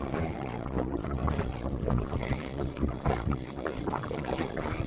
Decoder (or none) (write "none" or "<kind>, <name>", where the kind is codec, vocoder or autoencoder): vocoder, Vocos